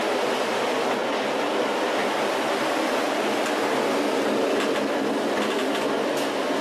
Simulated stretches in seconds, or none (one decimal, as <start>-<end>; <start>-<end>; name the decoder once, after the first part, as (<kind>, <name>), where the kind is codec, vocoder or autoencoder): 2.0-2.6 (vocoder, BigVGAN v2)